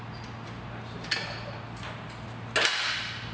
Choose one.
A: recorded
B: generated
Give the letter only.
A